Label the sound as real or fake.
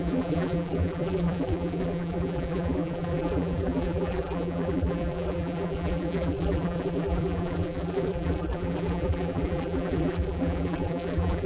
fake